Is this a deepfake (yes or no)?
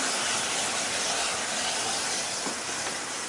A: no